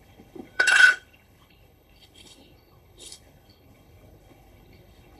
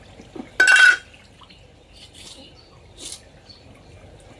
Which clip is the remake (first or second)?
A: first